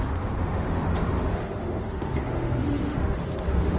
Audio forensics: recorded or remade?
remade